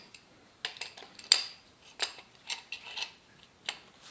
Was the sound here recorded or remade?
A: recorded